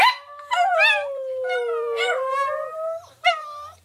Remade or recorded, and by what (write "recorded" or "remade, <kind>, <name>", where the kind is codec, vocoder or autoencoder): remade, vocoder, BigVGAN v2